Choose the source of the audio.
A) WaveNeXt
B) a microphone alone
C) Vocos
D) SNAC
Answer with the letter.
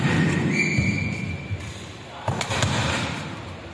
B